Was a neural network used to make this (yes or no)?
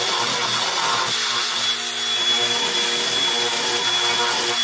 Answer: no